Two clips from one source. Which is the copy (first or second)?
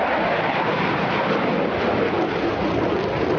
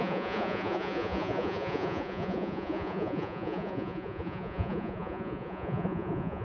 second